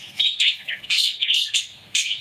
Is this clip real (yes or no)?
no